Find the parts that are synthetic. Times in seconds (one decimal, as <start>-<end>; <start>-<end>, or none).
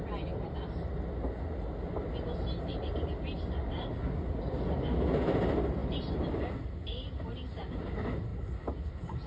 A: none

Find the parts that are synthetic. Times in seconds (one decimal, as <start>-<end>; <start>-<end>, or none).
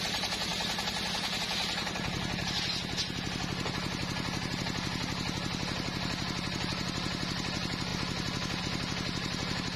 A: none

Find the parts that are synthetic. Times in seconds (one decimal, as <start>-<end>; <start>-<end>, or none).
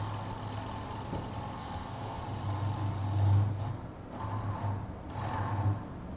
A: 1.6-2.2